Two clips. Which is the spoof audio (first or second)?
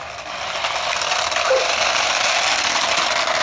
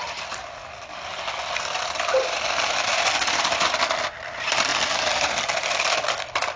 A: second